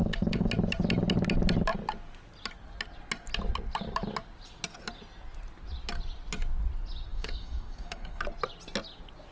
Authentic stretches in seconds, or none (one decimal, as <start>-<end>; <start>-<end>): 0.5-7.1; 8.2-9.3